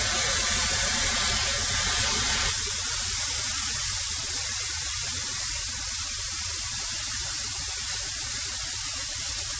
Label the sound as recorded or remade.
recorded